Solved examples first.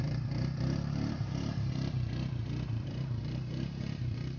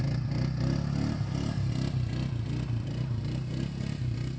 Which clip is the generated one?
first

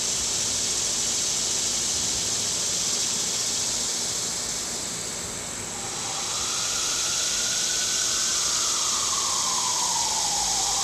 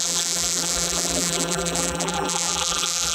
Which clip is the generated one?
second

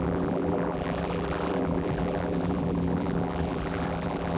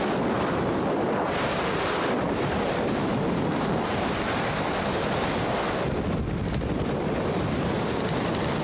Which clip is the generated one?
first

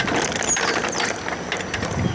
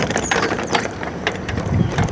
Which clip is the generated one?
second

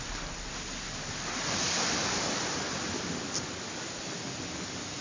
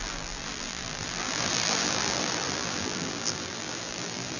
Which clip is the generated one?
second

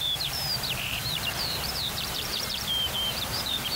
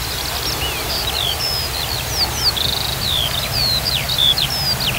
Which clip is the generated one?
first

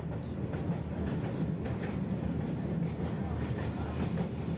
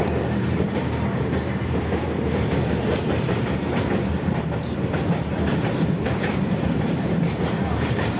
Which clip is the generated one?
second